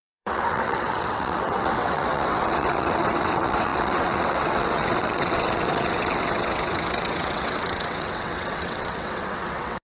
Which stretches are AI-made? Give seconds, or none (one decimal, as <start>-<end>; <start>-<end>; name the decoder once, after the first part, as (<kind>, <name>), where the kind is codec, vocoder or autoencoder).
0.0-9.8 (vocoder, WaveNeXt)